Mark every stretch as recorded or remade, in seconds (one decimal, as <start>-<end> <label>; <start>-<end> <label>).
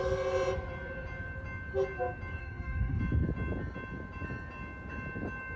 0.0-2.4 recorded; 2.4-3.0 remade; 3.0-5.6 recorded